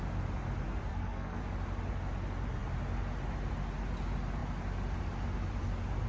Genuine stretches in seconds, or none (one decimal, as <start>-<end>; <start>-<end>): 0.0-0.9; 1.4-6.1